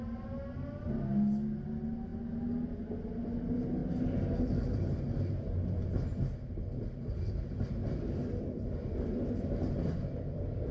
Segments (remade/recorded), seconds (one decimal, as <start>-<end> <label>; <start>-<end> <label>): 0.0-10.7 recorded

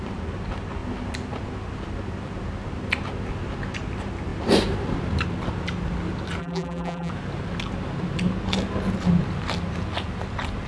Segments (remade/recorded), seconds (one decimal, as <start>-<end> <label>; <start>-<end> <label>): 0.0-6.4 recorded; 6.4-7.1 remade; 7.1-10.7 recorded

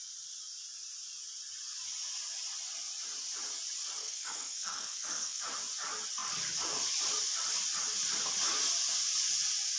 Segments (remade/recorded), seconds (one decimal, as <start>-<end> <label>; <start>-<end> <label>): 0.0-4.0 recorded; 4.0-5.4 remade; 5.4-9.8 recorded

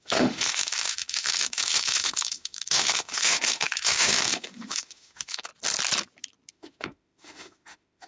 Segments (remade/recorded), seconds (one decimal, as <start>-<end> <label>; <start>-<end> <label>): 0.0-5.5 remade; 5.5-6.5 recorded; 6.5-8.1 remade